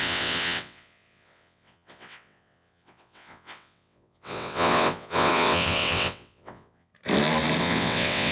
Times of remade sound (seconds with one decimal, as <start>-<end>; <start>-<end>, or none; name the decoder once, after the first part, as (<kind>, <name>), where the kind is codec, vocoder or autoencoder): 0.0-6.9 (vocoder, WaveNeXt); 7.6-8.3